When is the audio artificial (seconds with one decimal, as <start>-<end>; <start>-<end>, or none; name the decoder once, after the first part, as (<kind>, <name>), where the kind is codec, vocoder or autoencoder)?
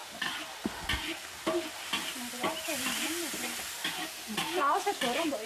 none